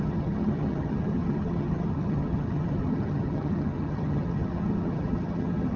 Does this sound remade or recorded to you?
remade